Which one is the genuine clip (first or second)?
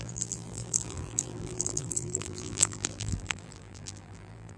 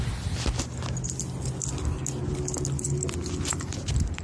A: second